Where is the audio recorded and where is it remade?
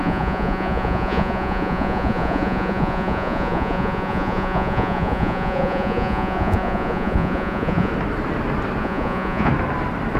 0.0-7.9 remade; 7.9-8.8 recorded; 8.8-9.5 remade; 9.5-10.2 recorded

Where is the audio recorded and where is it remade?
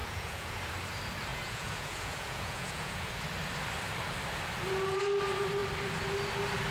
0.0-0.6 remade; 0.6-1.3 recorded; 1.3-3.1 remade; 3.1-6.7 recorded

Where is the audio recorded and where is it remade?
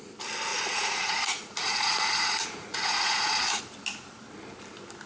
0.0-0.5 recorded; 0.5-3.6 remade; 3.6-5.1 recorded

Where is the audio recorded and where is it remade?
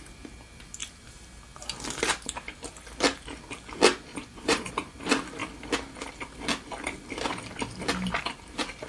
0.0-4.1 recorded; 4.1-4.7 remade; 4.7-8.9 recorded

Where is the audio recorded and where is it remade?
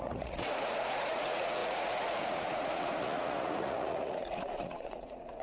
0.0-5.4 remade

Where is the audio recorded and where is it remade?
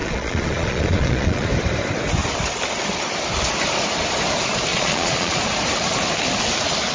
0.0-1.5 remade; 1.5-4.7 recorded; 4.7-5.4 remade; 5.4-6.9 recorded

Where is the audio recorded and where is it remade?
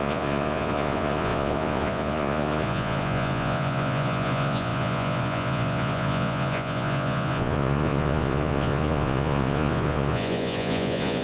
0.0-11.2 remade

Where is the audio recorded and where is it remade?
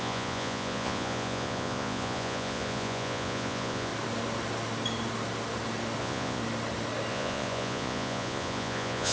0.0-3.9 remade; 3.9-6.0 recorded; 6.0-6.4 remade; 6.4-7.1 recorded; 7.1-9.1 remade